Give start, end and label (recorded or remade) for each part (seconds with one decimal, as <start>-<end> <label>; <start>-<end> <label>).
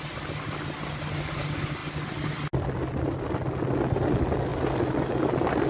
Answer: 0.0-5.7 recorded